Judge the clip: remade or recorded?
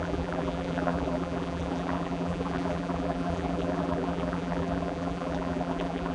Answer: remade